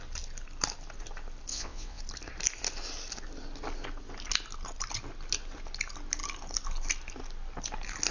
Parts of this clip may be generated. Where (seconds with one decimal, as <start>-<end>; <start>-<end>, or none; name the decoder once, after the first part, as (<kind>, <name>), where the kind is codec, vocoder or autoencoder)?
1.5-2.0 (vocoder, WaveNeXt)